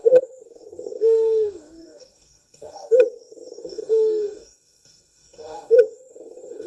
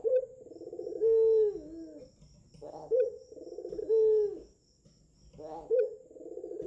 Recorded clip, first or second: second